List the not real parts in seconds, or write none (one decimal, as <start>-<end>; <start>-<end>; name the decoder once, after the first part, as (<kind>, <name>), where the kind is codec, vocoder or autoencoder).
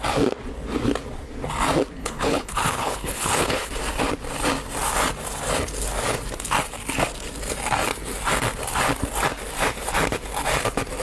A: 2.0-3.7 (codec, HILCodec)